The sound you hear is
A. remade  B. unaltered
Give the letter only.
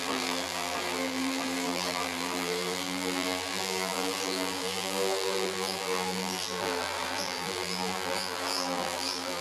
A